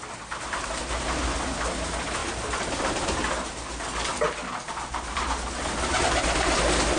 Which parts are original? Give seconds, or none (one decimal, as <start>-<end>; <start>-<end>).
0.0-7.0